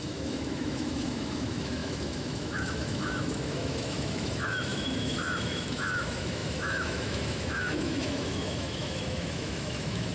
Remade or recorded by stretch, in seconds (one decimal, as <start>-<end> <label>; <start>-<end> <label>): 0.0-10.1 remade